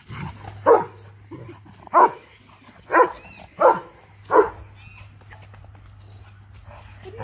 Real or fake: real